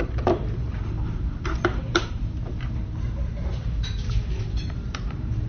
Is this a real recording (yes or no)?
no